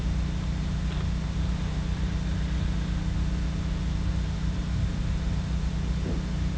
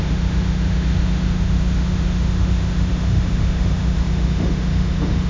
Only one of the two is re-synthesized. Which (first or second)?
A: second